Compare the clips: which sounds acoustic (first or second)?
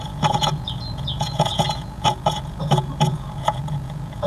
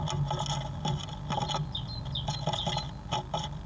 second